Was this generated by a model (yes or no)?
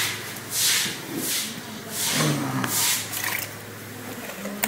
yes